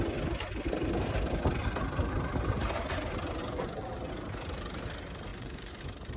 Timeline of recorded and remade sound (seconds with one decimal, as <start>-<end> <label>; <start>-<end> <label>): 0.0-3.4 recorded; 3.4-3.9 remade; 3.9-5.3 recorded; 5.3-5.8 remade; 5.8-6.2 recorded

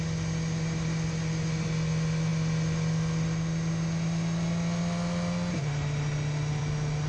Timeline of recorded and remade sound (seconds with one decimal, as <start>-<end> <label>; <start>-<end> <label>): 0.0-7.1 recorded

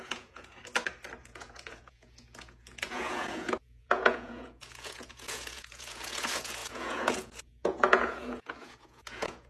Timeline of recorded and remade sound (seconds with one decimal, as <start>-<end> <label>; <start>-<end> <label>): 0.0-0.6 remade; 0.6-1.2 recorded; 1.2-9.5 remade

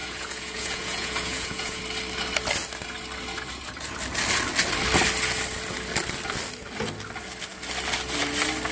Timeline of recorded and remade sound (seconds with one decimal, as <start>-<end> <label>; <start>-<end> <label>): 0.0-1.8 remade; 1.8-8.7 recorded

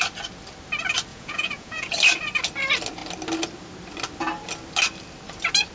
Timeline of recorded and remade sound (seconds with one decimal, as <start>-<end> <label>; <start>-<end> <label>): 0.0-1.1 recorded; 1.1-1.9 remade; 1.9-5.7 recorded